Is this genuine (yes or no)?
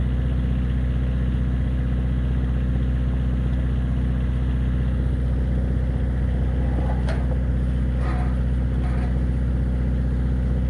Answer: yes